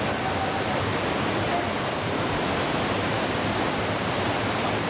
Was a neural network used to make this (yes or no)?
no